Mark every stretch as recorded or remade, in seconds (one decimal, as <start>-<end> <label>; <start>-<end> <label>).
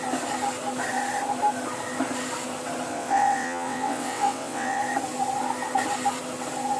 0.0-2.9 recorded; 2.9-4.8 remade; 4.8-6.8 recorded